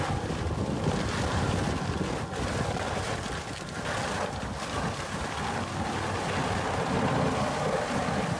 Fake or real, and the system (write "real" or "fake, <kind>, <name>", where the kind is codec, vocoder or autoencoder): real